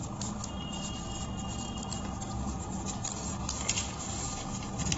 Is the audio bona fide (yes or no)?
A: yes